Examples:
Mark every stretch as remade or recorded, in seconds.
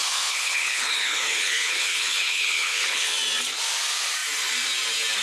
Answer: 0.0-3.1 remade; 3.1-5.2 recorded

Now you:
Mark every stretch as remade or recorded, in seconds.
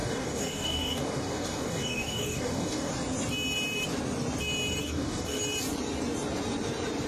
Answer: 0.0-2.9 remade; 2.9-4.8 recorded; 4.8-5.4 remade; 5.4-7.1 recorded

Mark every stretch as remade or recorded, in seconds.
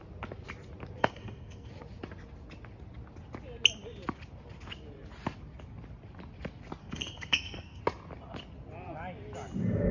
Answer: 0.0-1.0 recorded; 1.0-1.7 remade; 1.7-6.8 recorded; 6.8-7.8 remade; 7.8-9.9 recorded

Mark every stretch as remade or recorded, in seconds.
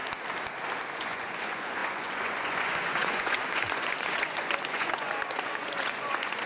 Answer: 0.0-0.9 recorded; 0.9-6.5 remade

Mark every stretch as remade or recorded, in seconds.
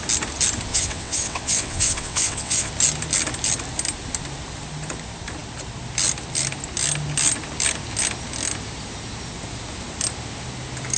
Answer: 0.0-0.7 recorded; 0.7-2.7 remade; 2.7-11.0 recorded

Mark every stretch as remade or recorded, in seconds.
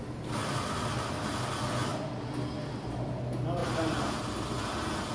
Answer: 0.0-0.4 recorded; 0.4-1.3 remade; 1.3-3.6 recorded; 3.6-5.1 remade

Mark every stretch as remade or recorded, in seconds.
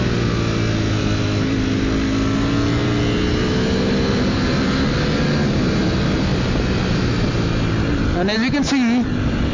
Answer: 0.0-9.5 recorded